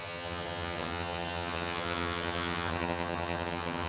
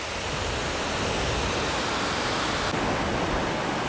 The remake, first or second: first